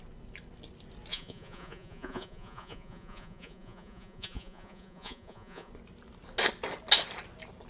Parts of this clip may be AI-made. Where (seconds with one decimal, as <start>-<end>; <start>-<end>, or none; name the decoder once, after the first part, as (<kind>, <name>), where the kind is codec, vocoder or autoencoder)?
1.1-5.7 (vocoder, Vocos)